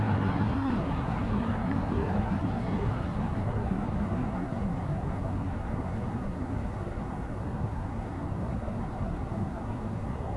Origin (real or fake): fake